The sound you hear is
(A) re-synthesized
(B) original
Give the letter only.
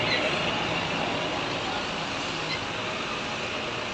B